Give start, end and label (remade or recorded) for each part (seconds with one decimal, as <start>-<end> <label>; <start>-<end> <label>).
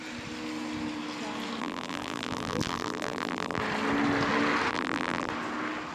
0.0-1.6 recorded; 1.6-3.6 remade; 3.6-4.7 recorded; 4.7-5.3 remade; 5.3-5.9 recorded